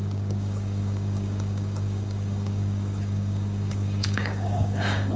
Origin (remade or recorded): remade